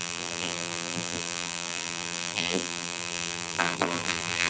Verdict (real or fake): fake